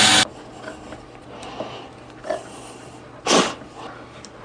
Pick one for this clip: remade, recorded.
recorded